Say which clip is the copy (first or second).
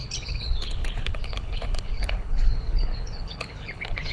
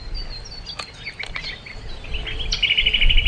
first